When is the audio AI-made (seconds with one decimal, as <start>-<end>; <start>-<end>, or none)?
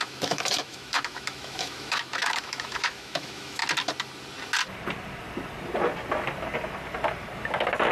0.0-3.6